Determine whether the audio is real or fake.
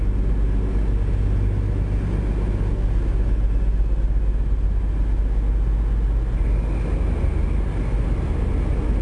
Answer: real